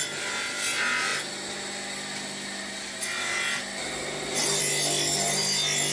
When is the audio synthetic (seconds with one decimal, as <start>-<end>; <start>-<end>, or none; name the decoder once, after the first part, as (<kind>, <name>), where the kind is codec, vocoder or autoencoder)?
none